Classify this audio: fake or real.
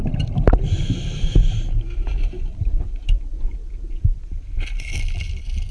real